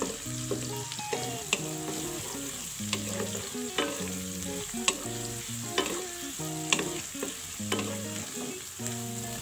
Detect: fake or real real